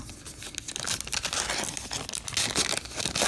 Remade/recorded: recorded